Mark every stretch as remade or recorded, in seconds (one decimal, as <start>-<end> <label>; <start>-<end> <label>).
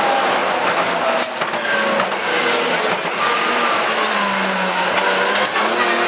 0.0-6.1 recorded